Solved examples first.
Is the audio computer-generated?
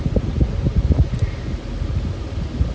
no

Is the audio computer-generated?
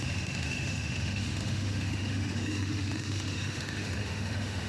yes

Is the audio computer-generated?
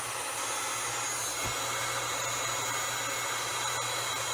no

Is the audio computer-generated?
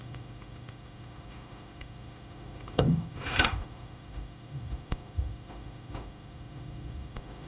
yes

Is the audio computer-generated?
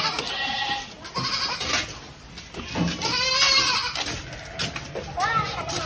no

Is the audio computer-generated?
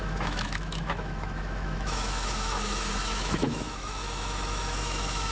yes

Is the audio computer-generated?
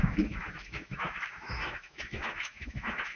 yes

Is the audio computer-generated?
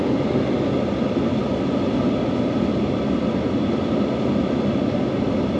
no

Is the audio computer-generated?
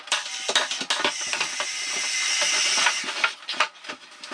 no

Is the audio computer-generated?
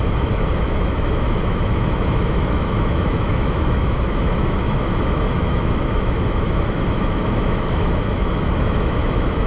yes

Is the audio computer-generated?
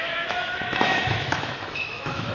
yes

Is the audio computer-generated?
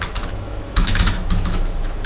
yes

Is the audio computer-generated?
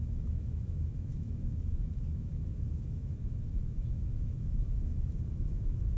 yes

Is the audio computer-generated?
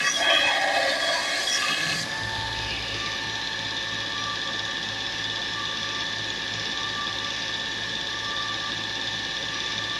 no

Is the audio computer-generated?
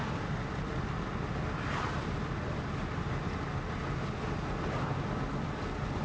no